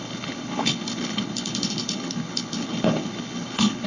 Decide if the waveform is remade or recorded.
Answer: remade